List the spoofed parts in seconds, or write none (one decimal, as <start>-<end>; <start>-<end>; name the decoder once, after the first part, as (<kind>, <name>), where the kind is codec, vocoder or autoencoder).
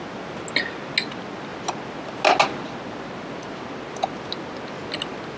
none